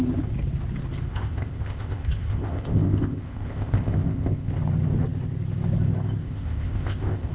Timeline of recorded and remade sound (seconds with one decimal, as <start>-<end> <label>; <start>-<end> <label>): 0.0-1.1 recorded; 1.1-4.5 remade; 4.5-6.2 recorded; 6.2-7.3 remade